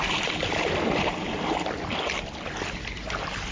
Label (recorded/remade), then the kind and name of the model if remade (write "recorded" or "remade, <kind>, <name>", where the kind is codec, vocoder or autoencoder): recorded